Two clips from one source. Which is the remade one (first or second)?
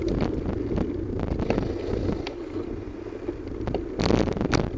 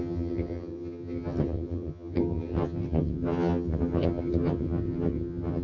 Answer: second